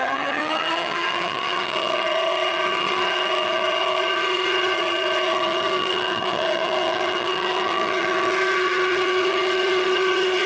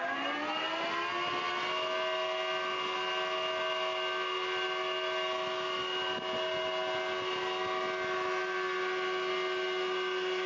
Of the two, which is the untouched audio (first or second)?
second